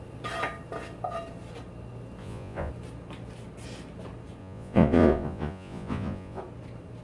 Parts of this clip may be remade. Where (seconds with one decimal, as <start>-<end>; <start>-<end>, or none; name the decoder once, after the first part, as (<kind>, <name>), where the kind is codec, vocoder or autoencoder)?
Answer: 2.2-2.7 (vocoder, Vocos); 4.4-6.4